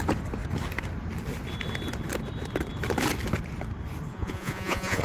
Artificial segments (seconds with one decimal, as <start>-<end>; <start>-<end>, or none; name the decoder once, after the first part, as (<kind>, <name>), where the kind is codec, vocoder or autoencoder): 4.1-5.0 (vocoder, Vocos)